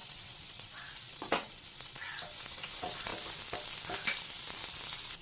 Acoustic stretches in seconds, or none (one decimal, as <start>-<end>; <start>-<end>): 3.1-5.2